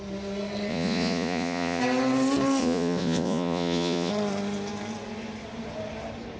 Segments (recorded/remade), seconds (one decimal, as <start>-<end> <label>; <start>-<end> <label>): 0.0-0.7 recorded; 0.7-1.8 remade; 1.8-2.6 recorded; 2.6-4.1 remade; 4.1-6.4 recorded